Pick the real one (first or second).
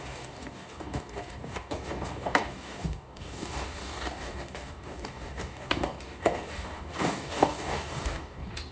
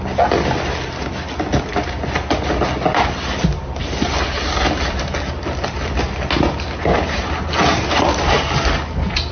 second